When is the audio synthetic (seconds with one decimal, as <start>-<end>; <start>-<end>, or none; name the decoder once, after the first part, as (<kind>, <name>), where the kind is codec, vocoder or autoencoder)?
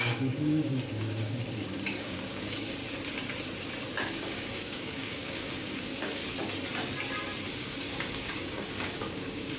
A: 0.0-2.8 (codec, DAC); 4.1-6.2; 7.5-9.6